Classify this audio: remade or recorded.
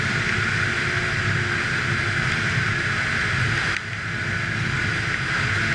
recorded